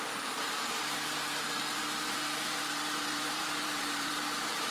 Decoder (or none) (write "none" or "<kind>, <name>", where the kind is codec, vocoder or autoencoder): vocoder, BigVGAN v2